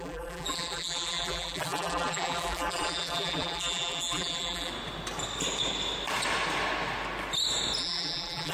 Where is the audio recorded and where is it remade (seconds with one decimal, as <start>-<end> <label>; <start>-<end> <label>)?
0.0-4.7 remade; 4.7-7.8 recorded; 7.8-8.5 remade